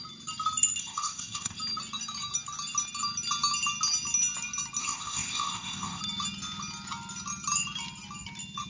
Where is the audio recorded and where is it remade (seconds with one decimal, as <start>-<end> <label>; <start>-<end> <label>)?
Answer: 0.0-0.8 recorded; 0.8-1.6 remade; 1.6-4.8 recorded; 4.8-6.0 remade; 6.0-8.7 recorded